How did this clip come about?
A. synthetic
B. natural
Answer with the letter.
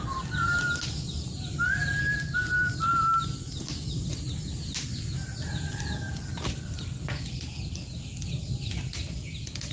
B